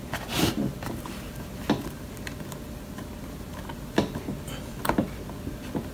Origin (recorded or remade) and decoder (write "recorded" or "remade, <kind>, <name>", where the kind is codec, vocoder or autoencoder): recorded